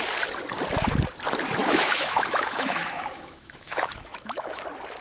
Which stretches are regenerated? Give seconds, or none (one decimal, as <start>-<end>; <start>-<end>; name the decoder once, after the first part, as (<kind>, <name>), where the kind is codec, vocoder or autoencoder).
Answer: 1.6-4.6 (autoencoder, DAC-VAE)